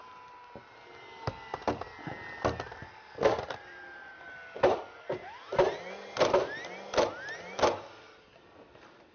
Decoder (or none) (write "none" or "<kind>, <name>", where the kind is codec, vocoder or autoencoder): none